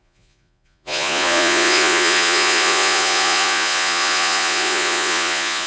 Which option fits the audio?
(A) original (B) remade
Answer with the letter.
B